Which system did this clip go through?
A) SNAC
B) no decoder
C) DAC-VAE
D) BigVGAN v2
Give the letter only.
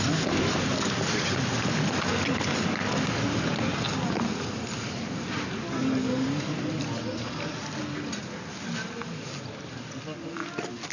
B